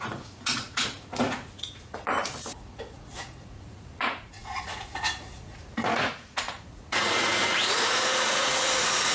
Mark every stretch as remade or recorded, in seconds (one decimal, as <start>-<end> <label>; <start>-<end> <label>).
0.0-9.1 remade